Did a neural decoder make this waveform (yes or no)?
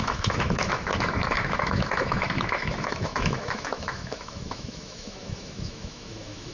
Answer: yes